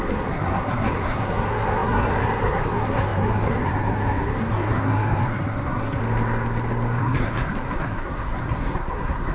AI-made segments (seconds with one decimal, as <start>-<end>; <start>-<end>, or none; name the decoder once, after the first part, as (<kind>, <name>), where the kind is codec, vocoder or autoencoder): 0.0-6.0 (codec, SNAC); 7.0-9.3

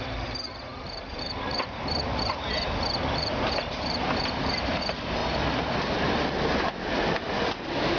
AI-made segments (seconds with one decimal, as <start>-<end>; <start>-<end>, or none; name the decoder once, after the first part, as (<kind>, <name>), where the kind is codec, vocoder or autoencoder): 0.0-5.2 (vocoder, BigVGAN v2)

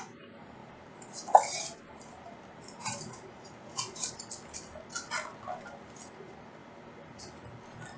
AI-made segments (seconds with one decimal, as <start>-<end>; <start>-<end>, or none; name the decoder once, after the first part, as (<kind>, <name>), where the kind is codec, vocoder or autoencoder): 0.6-4.3 (vocoder, BigVGAN v2)

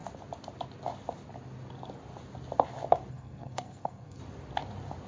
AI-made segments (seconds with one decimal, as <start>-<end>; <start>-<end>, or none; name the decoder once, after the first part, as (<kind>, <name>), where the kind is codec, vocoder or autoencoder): 3.1-4.2 (codec, SNAC)

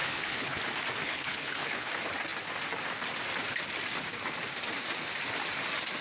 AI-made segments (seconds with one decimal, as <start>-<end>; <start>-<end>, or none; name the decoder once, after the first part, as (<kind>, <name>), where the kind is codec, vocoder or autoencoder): 0.0-0.6 (codec, HILCodec); 1.0-1.9